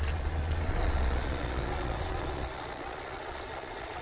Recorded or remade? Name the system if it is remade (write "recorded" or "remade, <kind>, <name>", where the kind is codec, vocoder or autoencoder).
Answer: remade, vocoder, Vocos